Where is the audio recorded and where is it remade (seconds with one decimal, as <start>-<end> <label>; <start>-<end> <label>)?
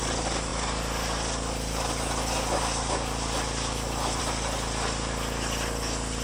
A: 0.0-6.2 recorded